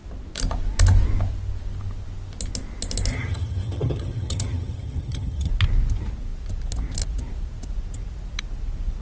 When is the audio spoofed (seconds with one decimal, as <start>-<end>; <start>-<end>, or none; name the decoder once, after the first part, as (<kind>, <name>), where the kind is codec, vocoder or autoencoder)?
3.1-5.5 (vocoder, HiFi-GAN)